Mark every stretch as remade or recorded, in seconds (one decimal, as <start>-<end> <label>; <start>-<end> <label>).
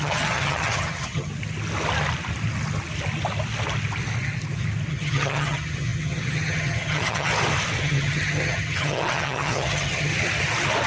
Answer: 0.0-1.3 remade; 1.3-4.9 recorded; 4.9-7.3 remade; 7.3-7.8 recorded; 7.8-10.1 remade; 10.1-10.9 recorded